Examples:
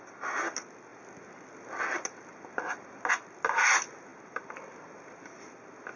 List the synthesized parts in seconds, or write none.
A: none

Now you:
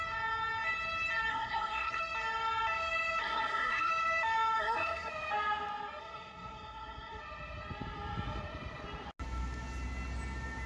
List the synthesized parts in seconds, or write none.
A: 1.3-2.0 (codec, SNAC); 3.2-3.9; 4.6-5.1; 6.0-7.2

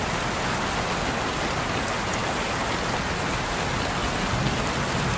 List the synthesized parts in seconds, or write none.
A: none

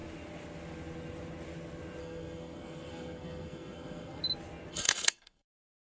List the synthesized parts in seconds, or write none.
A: 2.0-4.2 (codec, SNAC); 4.7-5.8